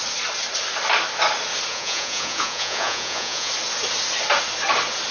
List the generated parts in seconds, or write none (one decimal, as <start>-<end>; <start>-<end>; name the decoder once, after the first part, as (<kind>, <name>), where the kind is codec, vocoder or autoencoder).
1.7-3.5 (vocoder, Vocos)